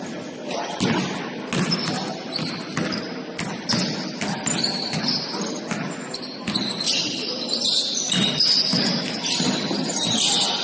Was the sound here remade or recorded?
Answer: recorded